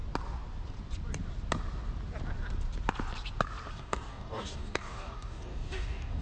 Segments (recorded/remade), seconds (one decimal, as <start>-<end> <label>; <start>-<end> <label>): 0.0-3.7 recorded; 3.7-6.2 remade

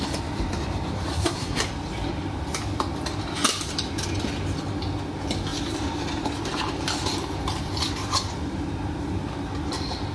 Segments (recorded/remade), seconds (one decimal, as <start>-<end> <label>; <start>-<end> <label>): 0.0-1.1 recorded; 1.1-1.6 remade; 1.6-10.1 recorded